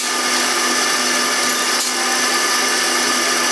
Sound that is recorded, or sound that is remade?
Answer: recorded